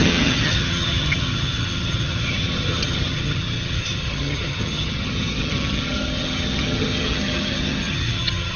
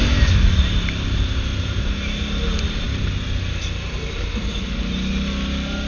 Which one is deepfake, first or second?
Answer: first